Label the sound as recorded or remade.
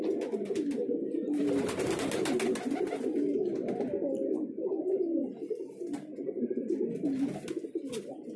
recorded